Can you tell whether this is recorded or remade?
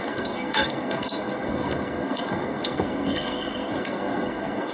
remade